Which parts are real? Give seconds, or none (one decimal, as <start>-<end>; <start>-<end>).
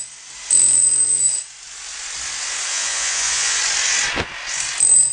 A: 0.0-2.7; 3.6-5.1